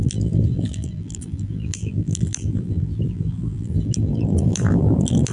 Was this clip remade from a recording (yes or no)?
yes